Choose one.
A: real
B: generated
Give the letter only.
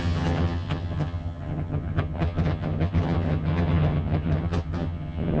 B